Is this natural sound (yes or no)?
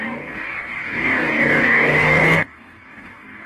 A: no